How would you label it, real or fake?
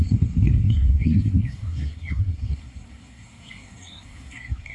fake